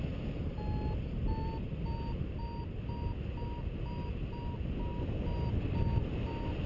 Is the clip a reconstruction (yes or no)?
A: no